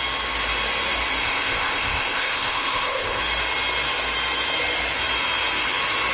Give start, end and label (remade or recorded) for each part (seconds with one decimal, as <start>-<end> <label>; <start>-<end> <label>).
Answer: 0.0-1.2 recorded; 1.2-3.2 remade; 3.2-6.1 recorded